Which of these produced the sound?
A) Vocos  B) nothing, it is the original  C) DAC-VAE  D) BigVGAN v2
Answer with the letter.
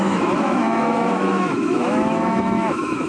C